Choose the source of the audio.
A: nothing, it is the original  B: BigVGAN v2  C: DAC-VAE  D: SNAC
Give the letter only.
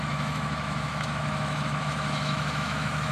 C